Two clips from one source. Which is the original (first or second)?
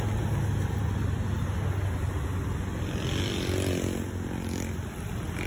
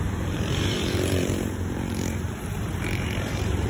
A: first